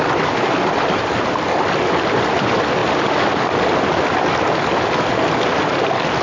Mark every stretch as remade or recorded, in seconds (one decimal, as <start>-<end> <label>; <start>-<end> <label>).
0.0-6.2 recorded